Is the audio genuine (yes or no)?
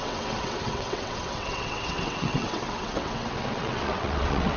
no